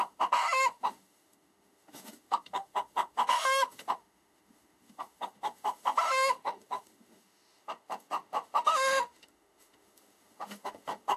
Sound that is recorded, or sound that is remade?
remade